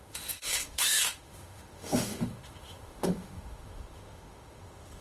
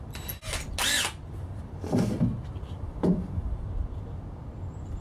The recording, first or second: second